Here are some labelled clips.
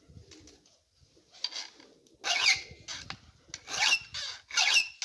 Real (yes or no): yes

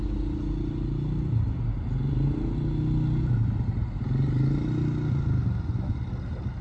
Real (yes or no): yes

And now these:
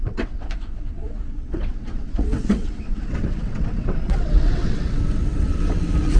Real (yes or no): no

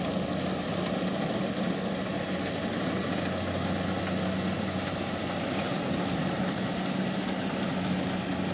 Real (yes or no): yes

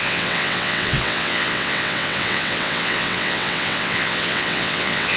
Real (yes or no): no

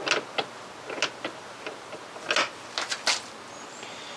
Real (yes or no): yes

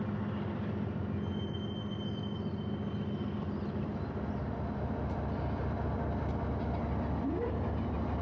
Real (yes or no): yes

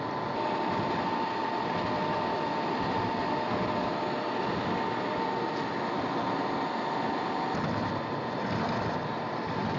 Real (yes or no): yes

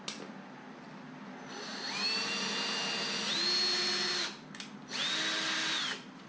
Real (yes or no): yes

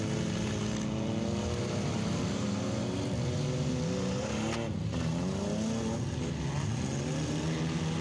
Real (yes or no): yes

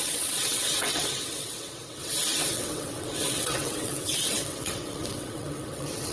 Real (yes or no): no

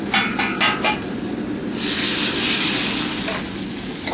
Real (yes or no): yes